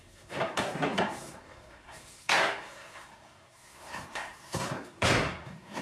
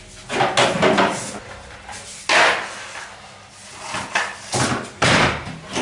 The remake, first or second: first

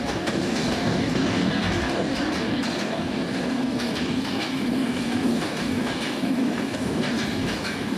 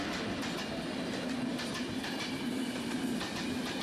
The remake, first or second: first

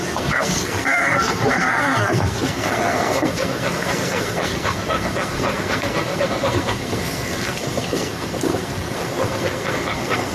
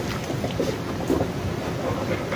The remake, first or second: first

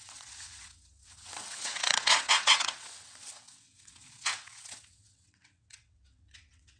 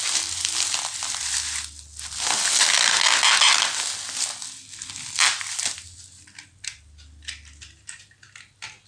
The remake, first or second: first